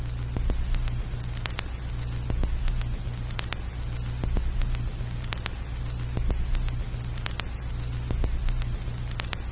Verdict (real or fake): real